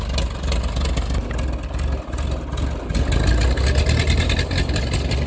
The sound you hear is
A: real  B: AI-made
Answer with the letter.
A